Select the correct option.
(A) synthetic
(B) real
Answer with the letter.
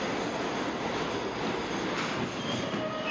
B